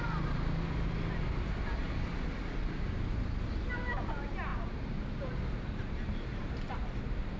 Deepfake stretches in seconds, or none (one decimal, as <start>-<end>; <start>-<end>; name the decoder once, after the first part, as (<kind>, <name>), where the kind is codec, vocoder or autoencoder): 4.5-6.5 (vocoder, BigVGAN v2)